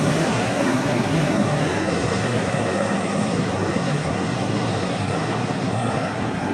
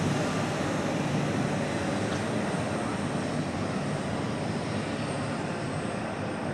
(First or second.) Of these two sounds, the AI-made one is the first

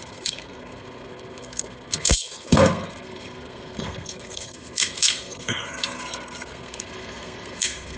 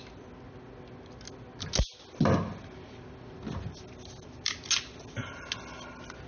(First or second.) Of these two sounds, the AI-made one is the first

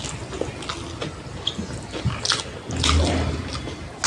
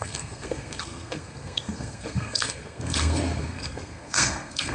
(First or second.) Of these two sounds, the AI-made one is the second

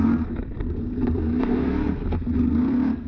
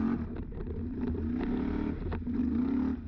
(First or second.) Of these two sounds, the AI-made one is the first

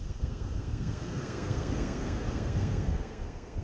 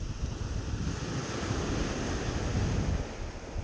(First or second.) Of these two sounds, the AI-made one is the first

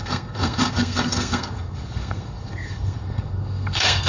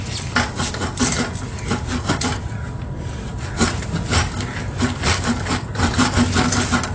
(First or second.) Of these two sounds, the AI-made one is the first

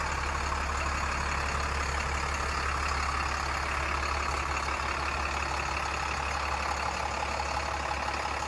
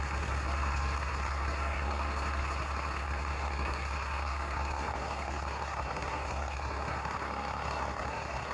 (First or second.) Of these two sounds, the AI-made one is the second